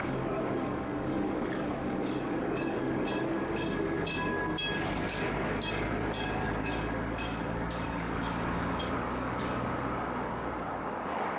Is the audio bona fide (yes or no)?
no